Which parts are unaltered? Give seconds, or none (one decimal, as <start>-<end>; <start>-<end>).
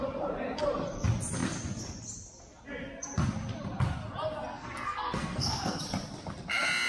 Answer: 0.0-4.5; 5.8-6.9